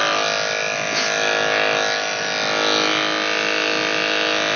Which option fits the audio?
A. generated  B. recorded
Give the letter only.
B